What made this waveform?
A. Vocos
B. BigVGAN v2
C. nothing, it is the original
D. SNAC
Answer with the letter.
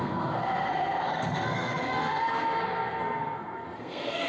D